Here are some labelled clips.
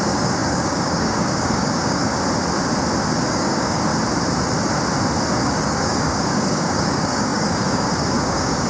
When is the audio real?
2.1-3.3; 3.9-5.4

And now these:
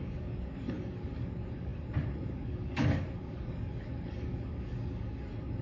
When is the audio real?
none

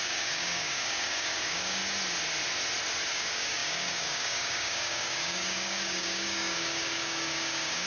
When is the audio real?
1.8-3.1